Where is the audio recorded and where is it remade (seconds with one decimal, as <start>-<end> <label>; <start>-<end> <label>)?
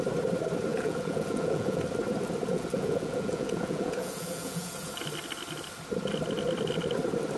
0.0-0.7 recorded; 0.7-1.8 remade; 1.8-2.5 recorded; 2.5-4.9 remade; 4.9-7.4 recorded